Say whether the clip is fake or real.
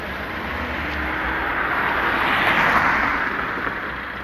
real